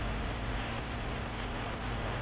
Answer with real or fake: real